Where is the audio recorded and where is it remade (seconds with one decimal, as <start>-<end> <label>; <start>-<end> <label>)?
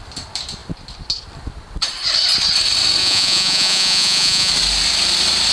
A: 0.0-3.0 recorded; 3.0-4.5 remade; 4.5-5.5 recorded